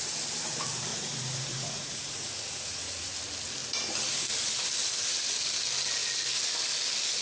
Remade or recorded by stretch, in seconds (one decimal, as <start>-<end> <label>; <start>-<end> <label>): 0.0-0.9 recorded; 0.9-3.2 remade; 3.2-7.2 recorded